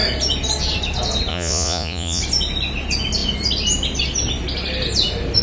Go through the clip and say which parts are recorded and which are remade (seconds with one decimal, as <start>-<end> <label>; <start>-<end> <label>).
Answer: 0.0-1.3 recorded; 1.3-2.2 remade; 2.2-5.4 recorded